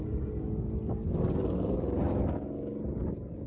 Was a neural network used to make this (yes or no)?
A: no